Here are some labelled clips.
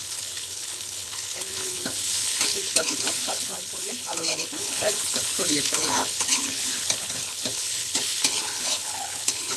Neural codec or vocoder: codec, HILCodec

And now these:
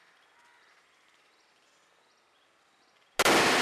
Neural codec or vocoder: none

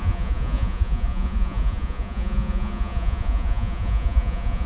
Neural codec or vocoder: vocoder, Vocos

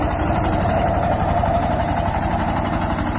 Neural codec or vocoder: vocoder, BigVGAN v2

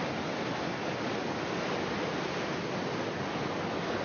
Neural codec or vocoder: none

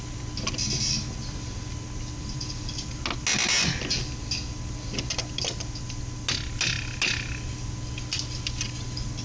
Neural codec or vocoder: none